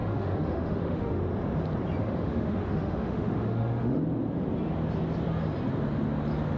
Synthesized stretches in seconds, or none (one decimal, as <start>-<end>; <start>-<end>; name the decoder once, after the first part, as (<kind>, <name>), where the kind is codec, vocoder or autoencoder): 0.0-1.2 (autoencoder, DAC-VAE); 2.0-4.0